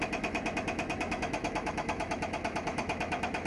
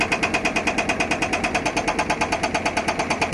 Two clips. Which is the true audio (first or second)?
second